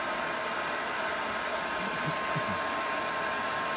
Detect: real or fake real